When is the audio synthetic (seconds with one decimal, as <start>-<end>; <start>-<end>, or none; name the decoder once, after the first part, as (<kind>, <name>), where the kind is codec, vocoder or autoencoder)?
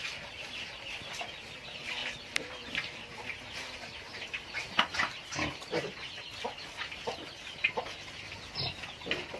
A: none